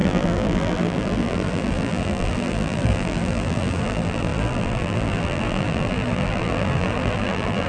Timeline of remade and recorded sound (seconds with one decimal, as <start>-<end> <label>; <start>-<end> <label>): 0.0-7.7 remade